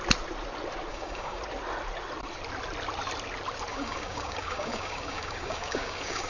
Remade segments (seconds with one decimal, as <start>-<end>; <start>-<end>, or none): 0.9-1.4; 3.7-6.3